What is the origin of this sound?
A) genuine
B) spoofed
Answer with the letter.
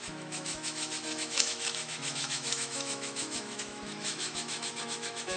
B